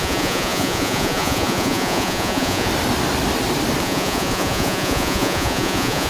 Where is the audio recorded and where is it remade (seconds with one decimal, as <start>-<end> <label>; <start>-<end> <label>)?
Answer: 0.0-2.7 remade; 2.7-3.8 recorded; 3.8-6.1 remade